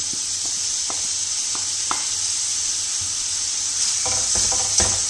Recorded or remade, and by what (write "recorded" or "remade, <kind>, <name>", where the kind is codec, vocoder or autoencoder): recorded